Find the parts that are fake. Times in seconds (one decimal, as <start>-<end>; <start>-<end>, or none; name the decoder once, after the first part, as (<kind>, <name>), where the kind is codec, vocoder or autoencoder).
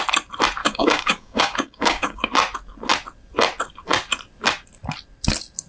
0.6-2.2 (codec, DAC)